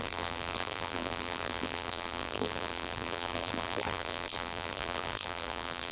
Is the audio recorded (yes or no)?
no